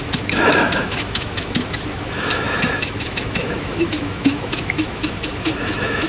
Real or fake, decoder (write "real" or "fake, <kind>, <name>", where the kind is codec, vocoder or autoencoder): fake, autoencoder, DAC-VAE